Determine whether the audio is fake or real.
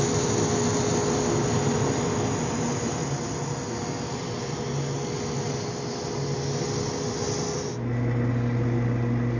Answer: real